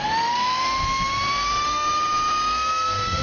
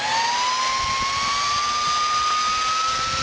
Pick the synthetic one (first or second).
first